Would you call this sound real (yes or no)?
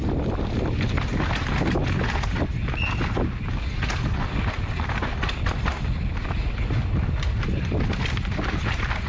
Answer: yes